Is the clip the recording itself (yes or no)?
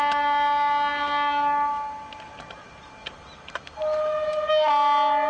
yes